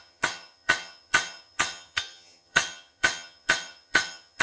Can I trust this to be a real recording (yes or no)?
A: no